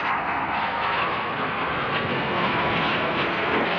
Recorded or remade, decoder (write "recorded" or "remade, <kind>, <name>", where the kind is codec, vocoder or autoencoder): remade, codec, SNAC